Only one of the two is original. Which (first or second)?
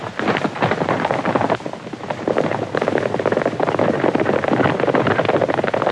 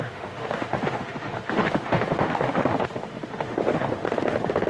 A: first